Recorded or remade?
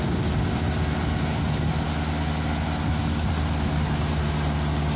recorded